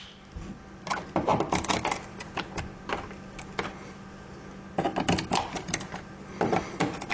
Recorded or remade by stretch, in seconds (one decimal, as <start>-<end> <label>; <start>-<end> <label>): 0.0-7.1 recorded